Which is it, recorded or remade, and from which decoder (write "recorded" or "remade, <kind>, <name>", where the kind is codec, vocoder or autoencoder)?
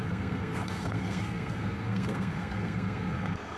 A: remade, codec, SNAC